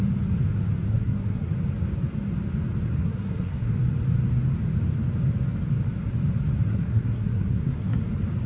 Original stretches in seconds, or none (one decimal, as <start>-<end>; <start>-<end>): 0.0-0.9; 1.5-3.0; 3.7-6.7; 8.0-8.5

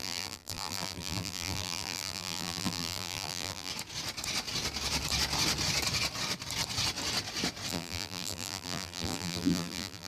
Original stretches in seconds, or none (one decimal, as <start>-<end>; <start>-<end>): 3.7-7.7

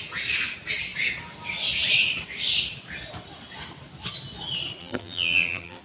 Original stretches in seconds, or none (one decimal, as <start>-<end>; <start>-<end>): 0.0-4.8

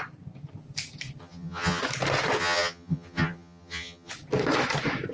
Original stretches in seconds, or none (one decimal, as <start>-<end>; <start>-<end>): 0.0-1.2; 1.8-2.4; 4.1-5.1

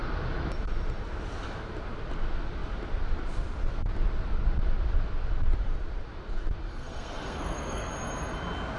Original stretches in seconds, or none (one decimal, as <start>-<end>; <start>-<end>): 0.0-6.7; 7.9-8.8

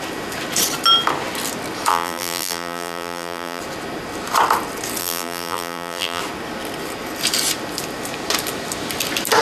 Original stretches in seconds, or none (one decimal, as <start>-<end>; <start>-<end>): 0.0-1.9; 3.6-5.0; 6.2-9.4

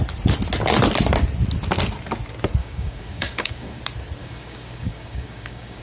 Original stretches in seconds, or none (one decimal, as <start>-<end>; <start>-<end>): 0.0-2.6; 3.8-4.2

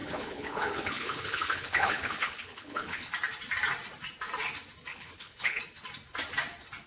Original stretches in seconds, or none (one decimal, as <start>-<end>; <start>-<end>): 3.1-4.9; 5.6-6.9